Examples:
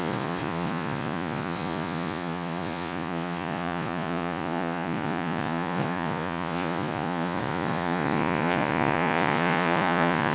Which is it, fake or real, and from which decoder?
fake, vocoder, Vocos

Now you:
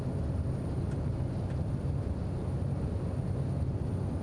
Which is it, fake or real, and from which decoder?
real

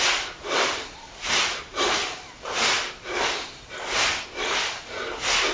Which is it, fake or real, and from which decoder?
real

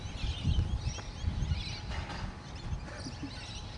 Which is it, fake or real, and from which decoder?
real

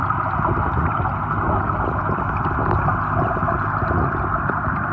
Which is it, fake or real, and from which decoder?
real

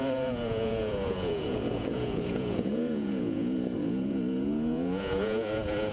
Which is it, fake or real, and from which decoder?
fake, vocoder, Vocos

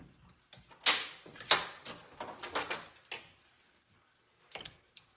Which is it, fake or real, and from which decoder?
real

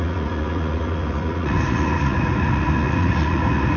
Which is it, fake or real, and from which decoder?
fake, vocoder, Vocos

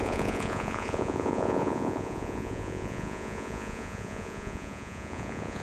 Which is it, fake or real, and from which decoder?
fake, vocoder, Vocos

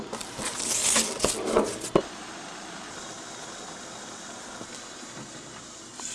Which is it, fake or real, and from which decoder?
real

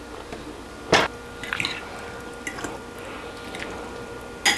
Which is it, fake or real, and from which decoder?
real